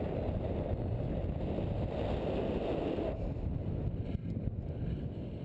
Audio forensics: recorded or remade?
remade